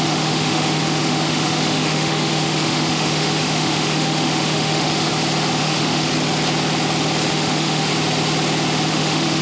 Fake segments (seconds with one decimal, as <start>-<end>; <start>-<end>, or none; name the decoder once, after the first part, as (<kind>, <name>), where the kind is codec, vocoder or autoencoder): 0.0-5.1 (autoencoder, DAC-VAE); 5.6-6.1; 7.3-7.9; 8.9-9.4